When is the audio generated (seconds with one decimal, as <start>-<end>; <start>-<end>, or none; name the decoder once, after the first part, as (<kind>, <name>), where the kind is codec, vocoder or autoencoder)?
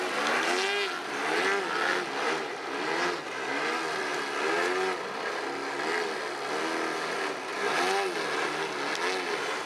none